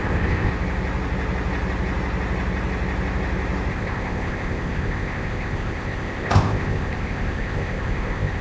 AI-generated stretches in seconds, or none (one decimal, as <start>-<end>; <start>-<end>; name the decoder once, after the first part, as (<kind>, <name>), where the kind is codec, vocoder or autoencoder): 0.0-0.5 (codec, ZipCodec); 3.7-8.4